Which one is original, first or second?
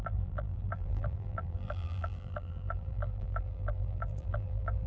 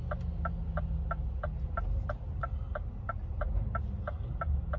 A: second